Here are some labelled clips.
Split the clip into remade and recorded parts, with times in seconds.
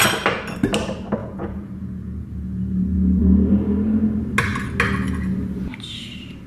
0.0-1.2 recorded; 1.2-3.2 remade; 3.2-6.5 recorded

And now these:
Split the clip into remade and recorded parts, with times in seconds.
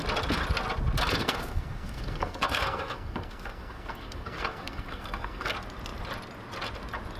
0.0-1.2 recorded; 1.2-5.5 remade; 5.5-7.2 recorded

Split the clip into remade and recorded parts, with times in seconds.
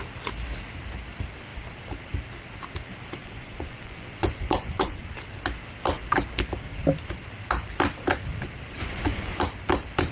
0.0-3.2 recorded; 3.2-5.0 remade; 5.0-8.8 recorded; 8.8-9.4 remade; 9.4-10.1 recorded